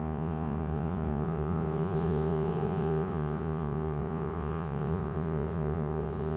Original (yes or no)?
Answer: no